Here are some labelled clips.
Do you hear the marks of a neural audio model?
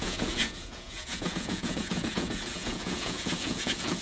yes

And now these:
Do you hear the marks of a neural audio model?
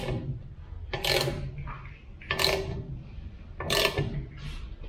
no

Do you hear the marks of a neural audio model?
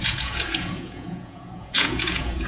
yes